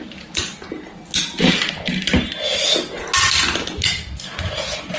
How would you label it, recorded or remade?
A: recorded